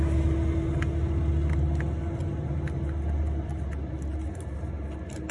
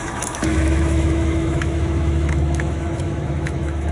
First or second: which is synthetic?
second